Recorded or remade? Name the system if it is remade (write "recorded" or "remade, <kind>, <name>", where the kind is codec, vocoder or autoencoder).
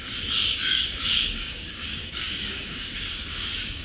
remade, codec, DAC